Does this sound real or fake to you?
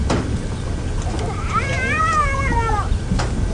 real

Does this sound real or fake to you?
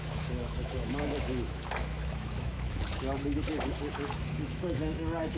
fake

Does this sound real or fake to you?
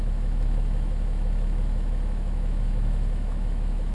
fake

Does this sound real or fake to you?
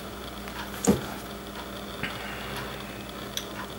real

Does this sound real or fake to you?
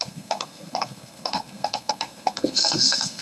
fake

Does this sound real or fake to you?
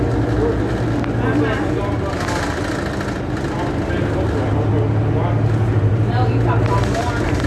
real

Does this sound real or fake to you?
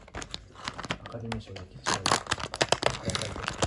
real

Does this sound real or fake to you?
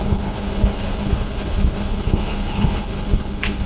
fake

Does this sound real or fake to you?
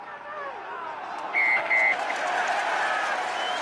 real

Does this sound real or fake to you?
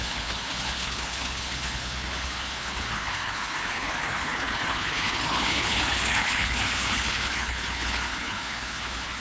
fake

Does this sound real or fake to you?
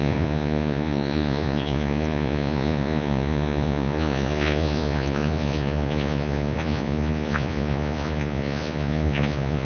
fake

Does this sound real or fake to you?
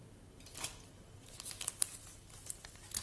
real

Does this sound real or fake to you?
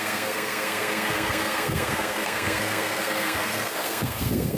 fake